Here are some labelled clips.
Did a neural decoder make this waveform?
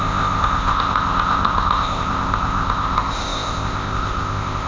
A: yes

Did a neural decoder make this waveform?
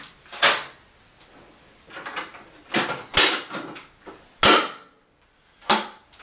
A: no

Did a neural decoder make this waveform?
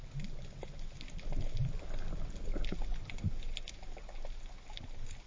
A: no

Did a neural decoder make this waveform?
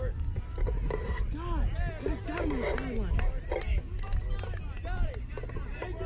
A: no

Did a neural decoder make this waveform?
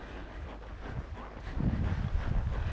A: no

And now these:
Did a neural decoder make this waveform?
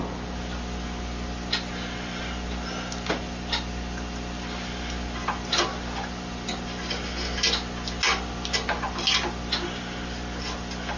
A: no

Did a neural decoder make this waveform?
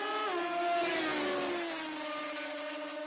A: no